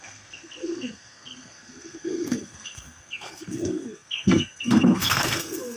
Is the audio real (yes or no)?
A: no